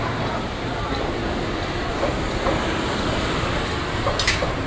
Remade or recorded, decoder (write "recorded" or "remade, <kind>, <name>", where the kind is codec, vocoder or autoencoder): recorded